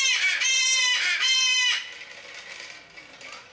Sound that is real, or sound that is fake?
real